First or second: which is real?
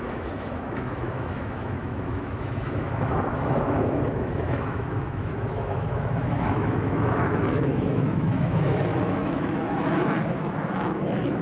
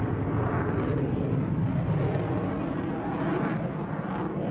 second